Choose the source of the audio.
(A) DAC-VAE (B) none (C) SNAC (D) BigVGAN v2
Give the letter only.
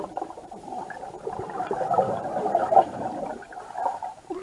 D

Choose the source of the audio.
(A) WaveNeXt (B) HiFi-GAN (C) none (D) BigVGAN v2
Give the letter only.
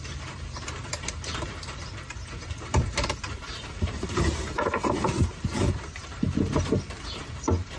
D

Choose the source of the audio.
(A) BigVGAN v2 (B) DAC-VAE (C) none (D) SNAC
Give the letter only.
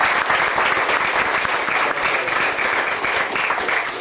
C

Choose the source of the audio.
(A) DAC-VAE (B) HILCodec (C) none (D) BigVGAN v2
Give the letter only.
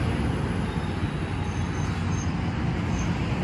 C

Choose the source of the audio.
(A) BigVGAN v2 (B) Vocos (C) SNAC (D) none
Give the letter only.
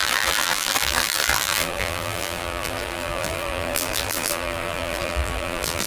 A